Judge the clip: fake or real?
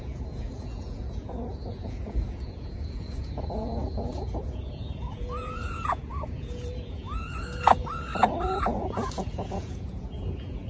fake